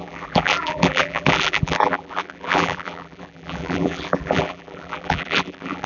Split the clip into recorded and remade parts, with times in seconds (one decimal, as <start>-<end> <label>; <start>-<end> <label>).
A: 0.0-5.9 remade